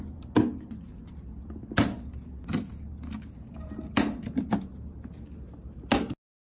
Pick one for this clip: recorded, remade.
recorded